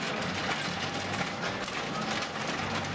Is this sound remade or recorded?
recorded